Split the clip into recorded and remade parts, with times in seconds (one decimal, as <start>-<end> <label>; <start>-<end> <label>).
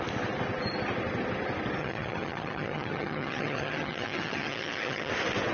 0.0-1.8 recorded; 1.8-5.1 remade; 5.1-5.5 recorded